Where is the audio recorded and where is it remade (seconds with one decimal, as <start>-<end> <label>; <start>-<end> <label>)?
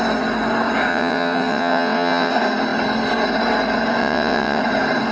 0.0-0.9 recorded; 0.9-2.3 remade; 2.3-4.0 recorded; 4.0-4.6 remade; 4.6-5.1 recorded